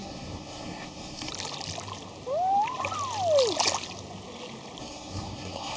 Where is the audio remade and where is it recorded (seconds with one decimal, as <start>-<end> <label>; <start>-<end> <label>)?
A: 0.0-1.3 remade; 1.3-4.8 recorded; 4.8-5.8 remade